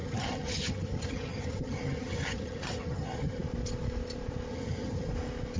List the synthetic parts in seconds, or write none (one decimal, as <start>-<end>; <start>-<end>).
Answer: 0.0-3.4; 4.5-5.1